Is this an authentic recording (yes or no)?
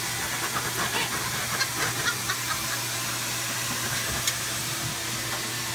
yes